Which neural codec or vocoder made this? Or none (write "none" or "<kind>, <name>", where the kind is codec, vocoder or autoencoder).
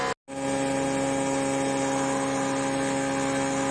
none